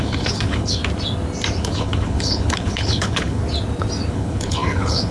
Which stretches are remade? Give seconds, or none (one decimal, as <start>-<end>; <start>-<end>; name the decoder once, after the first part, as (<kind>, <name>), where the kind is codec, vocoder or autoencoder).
0.0-0.8 (codec, HILCodec); 1.6-3.4; 4.1-5.1